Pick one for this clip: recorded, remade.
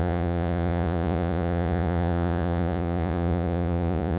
remade